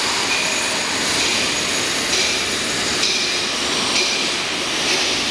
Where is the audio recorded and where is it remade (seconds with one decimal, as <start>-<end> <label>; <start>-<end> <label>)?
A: 0.0-5.3 recorded